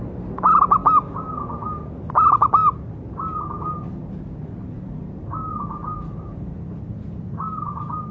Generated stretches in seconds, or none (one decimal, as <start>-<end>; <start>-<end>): none